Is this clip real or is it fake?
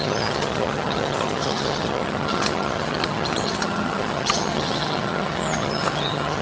fake